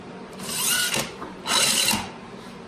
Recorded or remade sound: recorded